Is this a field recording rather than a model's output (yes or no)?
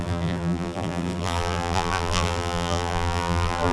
no